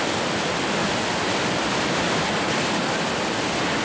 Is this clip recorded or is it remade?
recorded